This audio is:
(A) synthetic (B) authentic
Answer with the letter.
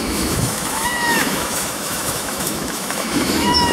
A